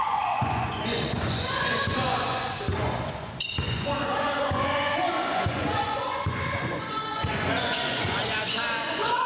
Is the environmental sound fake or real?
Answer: fake